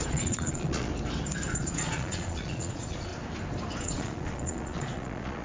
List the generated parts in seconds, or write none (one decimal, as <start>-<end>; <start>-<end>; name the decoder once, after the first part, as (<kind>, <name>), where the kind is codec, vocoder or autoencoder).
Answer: 0.0-0.9 (vocoder, Vocos); 1.5-3.1; 3.8-5.4